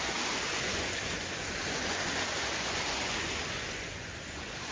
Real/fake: fake